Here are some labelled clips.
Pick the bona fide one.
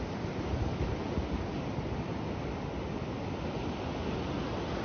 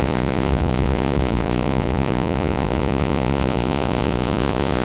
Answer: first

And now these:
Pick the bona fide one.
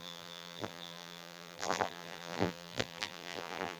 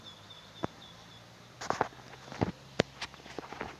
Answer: second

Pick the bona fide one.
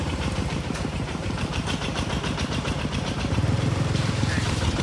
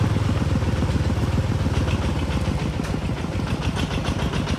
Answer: second